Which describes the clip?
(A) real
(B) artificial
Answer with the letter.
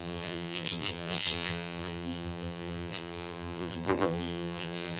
B